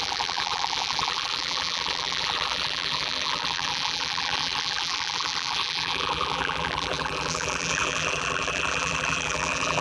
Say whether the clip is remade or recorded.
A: remade